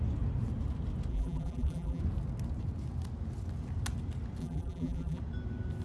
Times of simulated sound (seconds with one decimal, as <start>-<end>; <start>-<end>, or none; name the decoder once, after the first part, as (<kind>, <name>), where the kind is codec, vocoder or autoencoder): 1.1-2.0 (vocoder, BigVGAN v2); 4.4-5.2